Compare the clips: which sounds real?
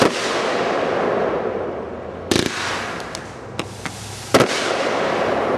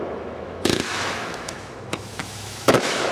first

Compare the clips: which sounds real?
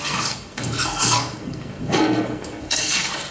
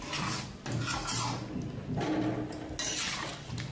second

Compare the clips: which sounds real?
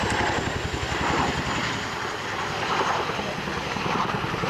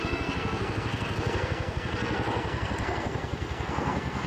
first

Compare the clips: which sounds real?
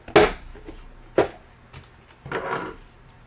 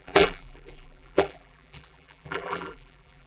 first